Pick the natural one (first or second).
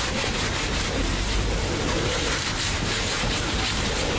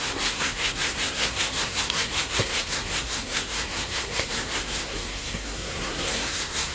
first